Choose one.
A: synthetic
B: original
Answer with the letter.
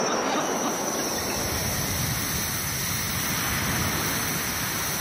B